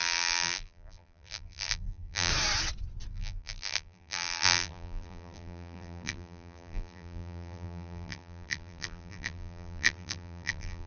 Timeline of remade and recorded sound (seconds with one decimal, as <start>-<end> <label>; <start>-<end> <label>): 0.0-2.3 remade; 2.3-3.1 recorded; 3.1-10.9 remade